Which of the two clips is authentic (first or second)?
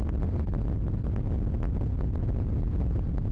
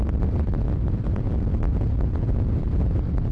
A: first